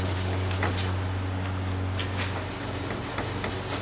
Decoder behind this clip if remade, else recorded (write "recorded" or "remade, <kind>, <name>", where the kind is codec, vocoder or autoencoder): recorded